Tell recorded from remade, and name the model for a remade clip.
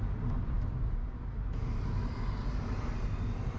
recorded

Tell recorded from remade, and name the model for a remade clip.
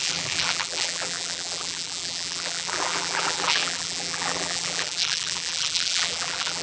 remade, vocoder, BigVGAN v2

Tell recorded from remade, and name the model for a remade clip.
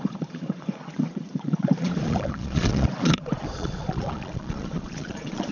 remade, vocoder, Vocos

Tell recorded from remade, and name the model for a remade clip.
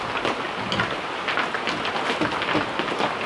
recorded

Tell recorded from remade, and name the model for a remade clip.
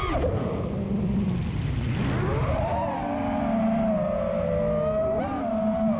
recorded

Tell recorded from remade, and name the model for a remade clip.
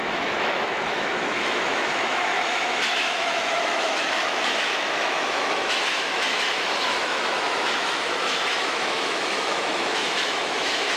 remade, autoencoder, DAC-VAE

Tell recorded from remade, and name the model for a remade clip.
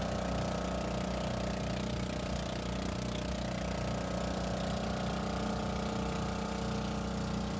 recorded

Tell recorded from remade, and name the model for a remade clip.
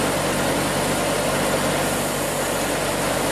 recorded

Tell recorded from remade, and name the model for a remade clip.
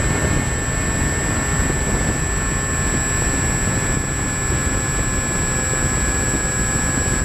recorded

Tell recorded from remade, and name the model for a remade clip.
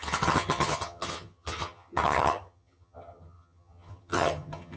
remade, vocoder, HiFi-GAN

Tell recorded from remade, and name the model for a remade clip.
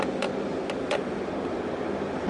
recorded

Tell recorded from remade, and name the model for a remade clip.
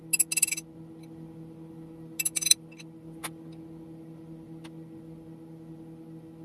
recorded